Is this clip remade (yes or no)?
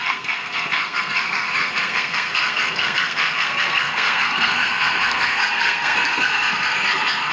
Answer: yes